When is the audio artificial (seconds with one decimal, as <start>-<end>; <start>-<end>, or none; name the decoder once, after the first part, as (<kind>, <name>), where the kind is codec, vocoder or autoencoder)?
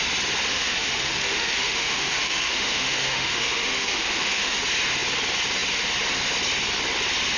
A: 0.5-4.6 (autoencoder, DAC-VAE)